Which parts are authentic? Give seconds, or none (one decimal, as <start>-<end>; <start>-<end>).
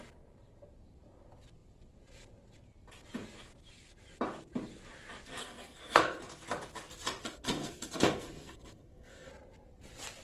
0.0-5.4; 6.2-7.2; 9.3-10.2